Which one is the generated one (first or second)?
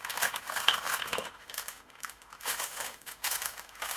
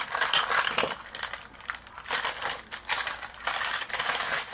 first